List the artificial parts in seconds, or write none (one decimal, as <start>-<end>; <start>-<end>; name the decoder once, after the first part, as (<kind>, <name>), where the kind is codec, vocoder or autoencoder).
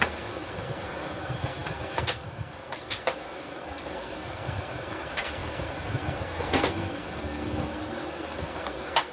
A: 0.0-9.1 (codec, SNAC)